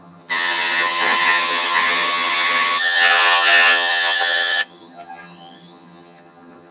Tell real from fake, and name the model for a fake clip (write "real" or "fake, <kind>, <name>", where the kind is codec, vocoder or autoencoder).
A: fake, vocoder, HiFi-GAN